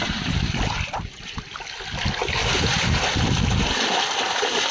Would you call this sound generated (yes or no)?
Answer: no